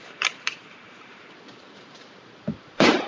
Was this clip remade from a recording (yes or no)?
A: yes